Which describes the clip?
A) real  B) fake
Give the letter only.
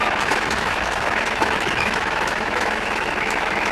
B